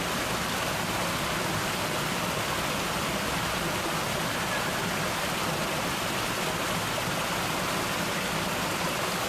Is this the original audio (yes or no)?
yes